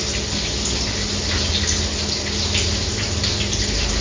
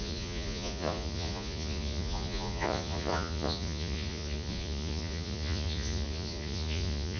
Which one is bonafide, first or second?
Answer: first